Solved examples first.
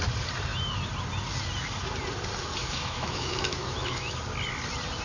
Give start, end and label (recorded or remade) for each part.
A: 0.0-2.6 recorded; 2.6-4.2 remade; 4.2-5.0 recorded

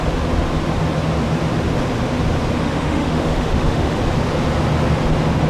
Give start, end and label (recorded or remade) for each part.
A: 0.0-2.6 recorded; 2.6-4.0 remade; 4.0-5.5 recorded

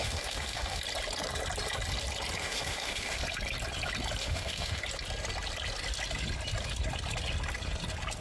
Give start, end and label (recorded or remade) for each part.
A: 0.0-0.8 remade; 0.8-2.4 recorded; 2.4-3.2 remade; 3.2-4.2 recorded; 4.2-4.8 remade; 4.8-8.2 recorded

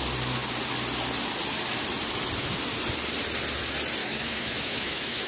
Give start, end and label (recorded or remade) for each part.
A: 0.0-4.0 recorded; 4.0-5.3 remade

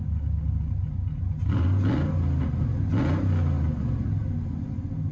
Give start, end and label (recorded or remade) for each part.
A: 0.0-5.1 recorded

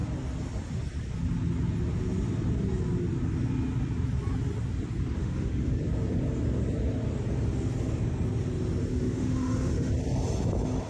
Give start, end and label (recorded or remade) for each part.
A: 0.0-5.2 recorded; 5.2-5.8 remade; 5.8-8.9 recorded; 8.9-9.9 remade; 9.9-10.9 recorded

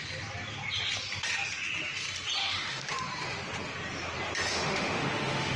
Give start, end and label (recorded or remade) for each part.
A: 0.0-2.4 recorded; 2.4-2.9 remade; 2.9-4.5 recorded; 4.5-5.6 remade